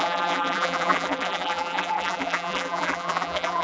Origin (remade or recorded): remade